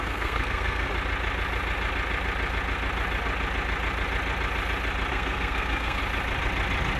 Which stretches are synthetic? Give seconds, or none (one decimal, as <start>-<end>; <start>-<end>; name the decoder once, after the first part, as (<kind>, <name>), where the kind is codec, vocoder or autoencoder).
0.0-0.9 (codec, SNAC); 5.1-6.0